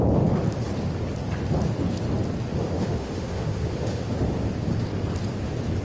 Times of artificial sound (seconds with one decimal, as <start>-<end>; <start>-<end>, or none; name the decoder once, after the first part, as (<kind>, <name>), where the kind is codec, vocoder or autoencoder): 2.6-4.2 (autoencoder, DAC-VAE)